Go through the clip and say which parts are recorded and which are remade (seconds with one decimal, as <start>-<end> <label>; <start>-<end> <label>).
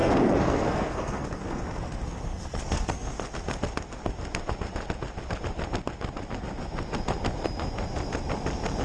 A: 0.0-3.2 remade; 3.2-8.8 recorded